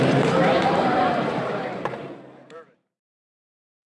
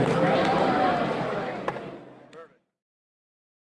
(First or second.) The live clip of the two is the second